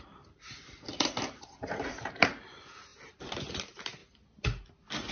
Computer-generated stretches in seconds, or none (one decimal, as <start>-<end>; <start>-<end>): 0.0-4.0